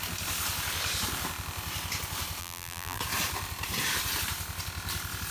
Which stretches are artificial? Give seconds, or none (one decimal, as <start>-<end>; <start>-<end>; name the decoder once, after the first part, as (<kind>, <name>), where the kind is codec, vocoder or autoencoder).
2.4-3.0 (vocoder, BigVGAN v2)